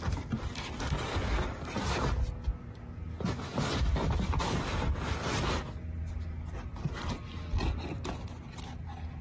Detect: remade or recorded recorded